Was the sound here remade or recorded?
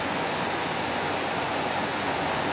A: remade